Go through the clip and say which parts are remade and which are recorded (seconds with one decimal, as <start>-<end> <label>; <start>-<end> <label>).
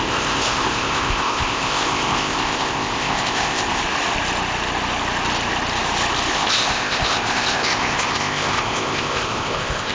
0.0-3.8 remade; 3.8-6.3 recorded; 6.3-9.9 remade